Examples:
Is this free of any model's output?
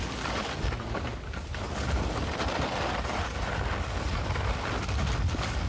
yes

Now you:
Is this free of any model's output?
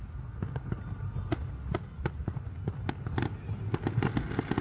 yes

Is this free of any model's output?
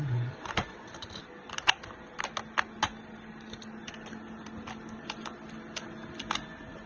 yes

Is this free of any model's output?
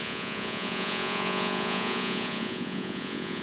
no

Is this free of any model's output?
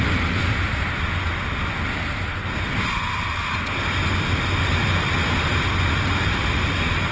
yes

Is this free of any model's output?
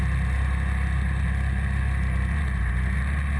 yes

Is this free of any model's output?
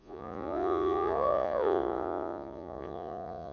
no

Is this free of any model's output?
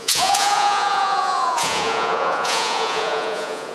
no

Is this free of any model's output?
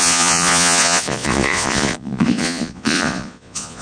no